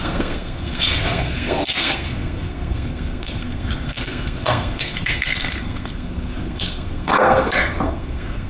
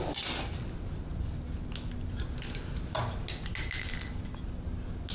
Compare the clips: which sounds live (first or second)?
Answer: second